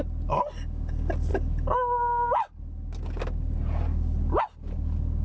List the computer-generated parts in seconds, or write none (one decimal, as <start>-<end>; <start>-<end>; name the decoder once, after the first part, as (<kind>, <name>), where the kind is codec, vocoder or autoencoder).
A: none

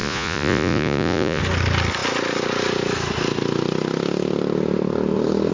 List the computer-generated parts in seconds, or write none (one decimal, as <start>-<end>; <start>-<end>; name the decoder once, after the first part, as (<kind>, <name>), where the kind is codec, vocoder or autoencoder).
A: 0.0-1.4 (vocoder, Vocos)

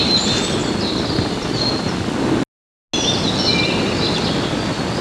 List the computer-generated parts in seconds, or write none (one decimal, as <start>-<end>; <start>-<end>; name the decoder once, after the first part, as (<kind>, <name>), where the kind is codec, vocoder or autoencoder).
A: none

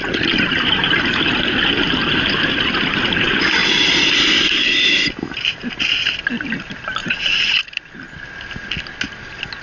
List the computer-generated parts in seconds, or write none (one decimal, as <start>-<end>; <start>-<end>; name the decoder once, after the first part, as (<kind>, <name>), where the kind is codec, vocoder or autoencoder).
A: 3.6-4.1 (vocoder, Vocos); 7.0-7.6

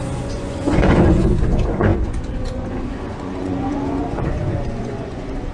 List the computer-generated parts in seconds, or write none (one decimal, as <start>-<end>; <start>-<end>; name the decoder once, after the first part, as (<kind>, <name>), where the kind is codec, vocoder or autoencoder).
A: 0.0-5.5 (vocoder, Vocos)

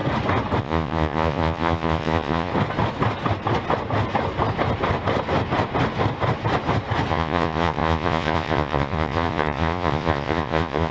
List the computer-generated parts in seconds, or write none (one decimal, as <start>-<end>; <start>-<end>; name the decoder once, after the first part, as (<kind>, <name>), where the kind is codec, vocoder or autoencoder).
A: 0.6-2.5 (vocoder, Vocos); 7.1-10.9

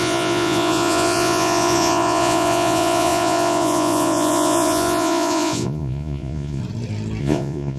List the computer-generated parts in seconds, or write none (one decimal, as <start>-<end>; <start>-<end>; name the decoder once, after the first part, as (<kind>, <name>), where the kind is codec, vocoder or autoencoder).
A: 0.0-6.6 (vocoder, Vocos); 7.2-7.8